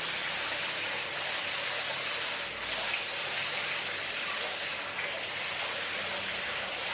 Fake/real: real